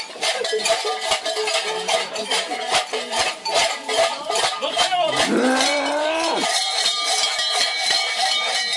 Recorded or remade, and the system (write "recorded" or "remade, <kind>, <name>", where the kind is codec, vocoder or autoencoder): remade, vocoder, BigVGAN v2